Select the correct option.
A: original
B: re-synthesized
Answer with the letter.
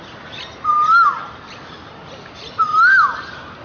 A